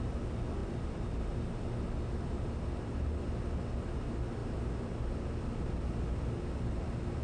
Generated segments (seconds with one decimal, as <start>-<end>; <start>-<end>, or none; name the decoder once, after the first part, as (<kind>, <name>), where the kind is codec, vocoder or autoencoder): 0.6-1.5 (vocoder, BigVGAN v2)